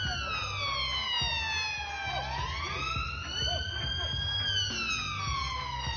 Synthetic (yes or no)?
no